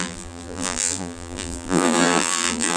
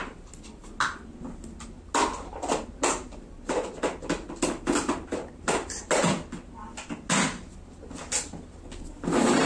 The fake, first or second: first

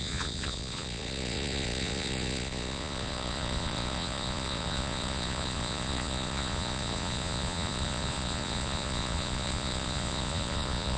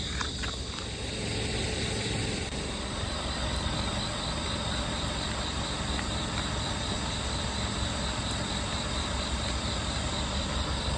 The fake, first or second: first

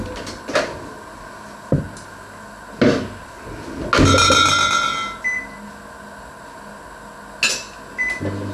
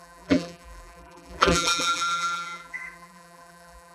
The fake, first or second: second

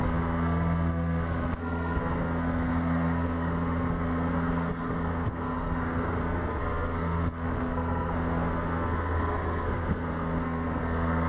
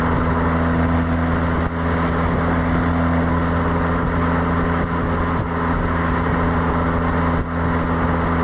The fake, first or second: first